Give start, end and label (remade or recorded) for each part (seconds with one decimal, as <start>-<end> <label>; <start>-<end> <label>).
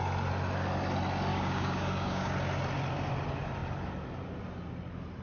0.0-1.3 recorded; 1.3-2.3 remade; 2.3-5.2 recorded